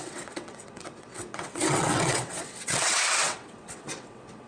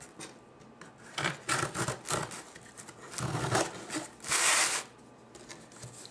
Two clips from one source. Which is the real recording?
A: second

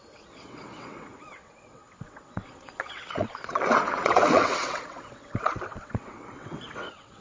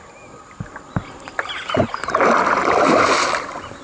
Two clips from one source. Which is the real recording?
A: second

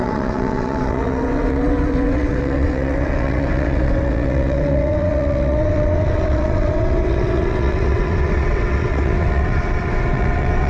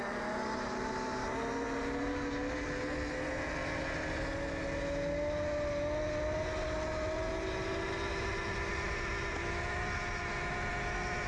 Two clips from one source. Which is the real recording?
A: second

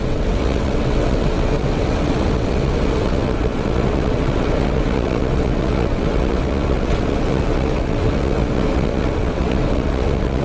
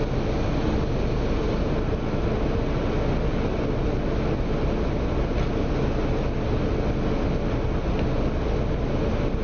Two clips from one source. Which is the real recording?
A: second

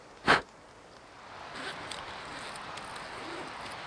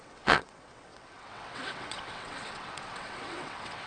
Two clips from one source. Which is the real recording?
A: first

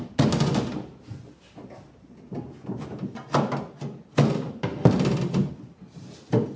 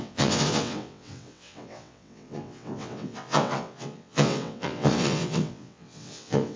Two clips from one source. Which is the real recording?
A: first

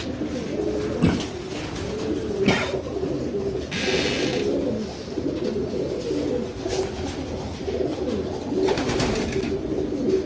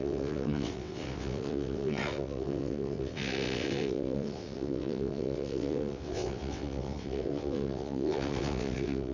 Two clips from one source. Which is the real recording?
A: first